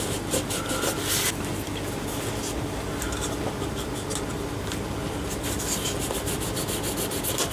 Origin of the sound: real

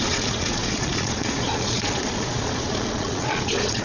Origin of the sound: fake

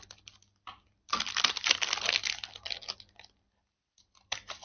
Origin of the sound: fake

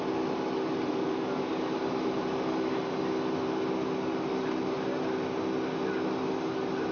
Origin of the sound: real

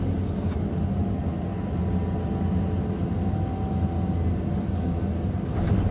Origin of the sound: real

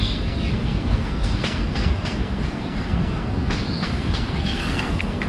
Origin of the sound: fake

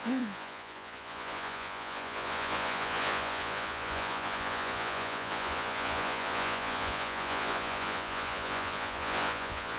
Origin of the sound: fake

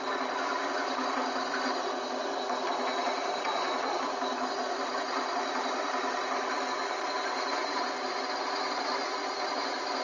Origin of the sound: real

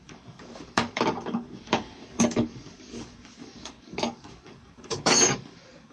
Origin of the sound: fake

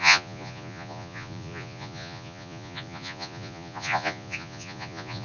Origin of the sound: fake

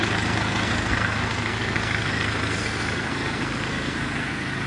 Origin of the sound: fake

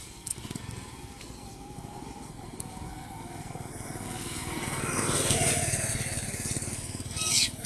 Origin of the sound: fake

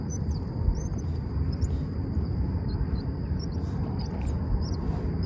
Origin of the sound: real